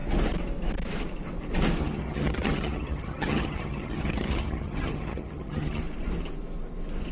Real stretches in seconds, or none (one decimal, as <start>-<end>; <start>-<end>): 0.0-1.8; 5.8-7.1